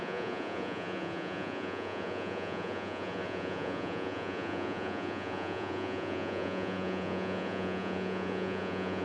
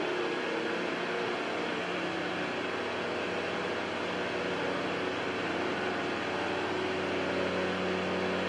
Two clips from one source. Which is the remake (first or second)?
first